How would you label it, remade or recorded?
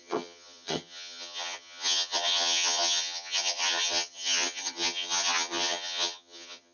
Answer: remade